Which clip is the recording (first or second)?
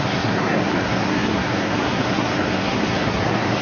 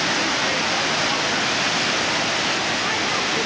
second